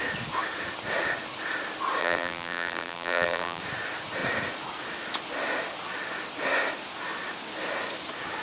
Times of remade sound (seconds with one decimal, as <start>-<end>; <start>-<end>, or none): 2.0-3.6